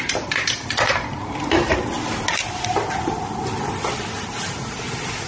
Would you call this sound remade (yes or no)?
no